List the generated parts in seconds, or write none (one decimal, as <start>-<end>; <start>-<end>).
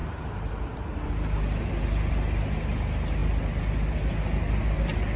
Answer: none